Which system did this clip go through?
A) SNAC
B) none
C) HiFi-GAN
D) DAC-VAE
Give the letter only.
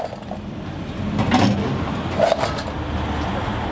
B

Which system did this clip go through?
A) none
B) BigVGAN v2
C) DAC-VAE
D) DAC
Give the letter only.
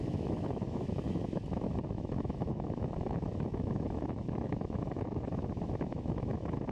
C